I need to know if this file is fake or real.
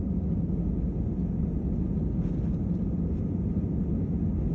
real